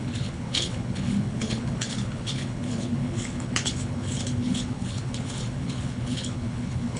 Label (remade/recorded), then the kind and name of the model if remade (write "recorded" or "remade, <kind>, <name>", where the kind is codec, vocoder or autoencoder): remade, codec, HILCodec